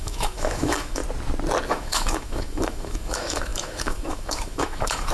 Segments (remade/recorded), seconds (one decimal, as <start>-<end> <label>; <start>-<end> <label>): 0.0-1.0 remade; 1.0-1.7 recorded; 1.7-5.1 remade